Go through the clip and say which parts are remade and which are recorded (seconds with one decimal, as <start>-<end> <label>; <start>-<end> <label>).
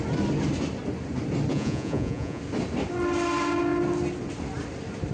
0.0-1.5 recorded; 1.5-2.4 remade; 2.4-5.1 recorded